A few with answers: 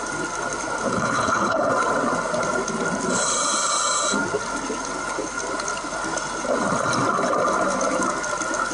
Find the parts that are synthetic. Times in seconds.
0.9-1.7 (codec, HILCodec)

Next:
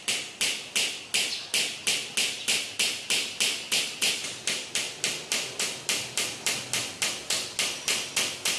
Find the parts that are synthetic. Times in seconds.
none

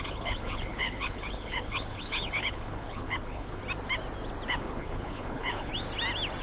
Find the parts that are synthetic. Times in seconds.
0.0-3.6 (codec, HILCodec); 4.5-5.7

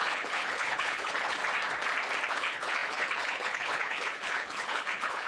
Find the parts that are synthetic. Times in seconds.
0.0-1.4 (codec, HILCodec); 2.3-5.3